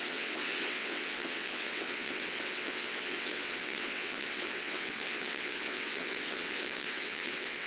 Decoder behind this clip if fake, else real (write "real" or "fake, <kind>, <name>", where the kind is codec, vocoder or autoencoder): fake, vocoder, WaveNeXt